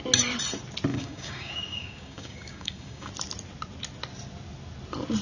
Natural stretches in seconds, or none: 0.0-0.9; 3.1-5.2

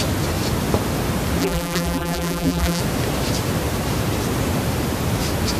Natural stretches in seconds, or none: 0.0-1.4; 2.8-5.6

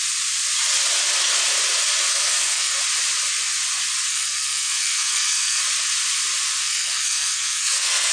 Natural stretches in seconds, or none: 0.0-2.1; 2.8-4.1; 5.6-6.6

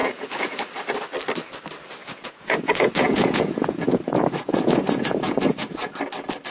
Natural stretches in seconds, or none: 0.6-2.0; 5.9-6.5

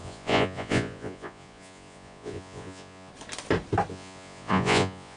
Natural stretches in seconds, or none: 3.1-3.9

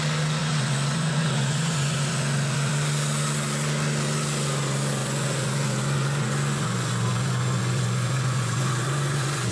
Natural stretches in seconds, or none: 0.0-0.4; 2.7-5.0

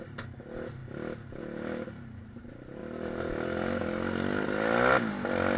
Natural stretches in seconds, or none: 0.0-5.6